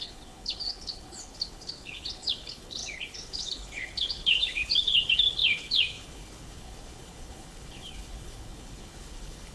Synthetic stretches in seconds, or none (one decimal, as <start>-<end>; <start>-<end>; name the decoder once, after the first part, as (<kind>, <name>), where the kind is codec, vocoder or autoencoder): 0.0-9.5 (codec, HILCodec)